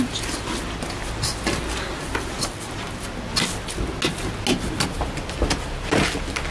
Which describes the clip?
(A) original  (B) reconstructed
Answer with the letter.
A